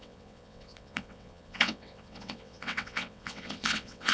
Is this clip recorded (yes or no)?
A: no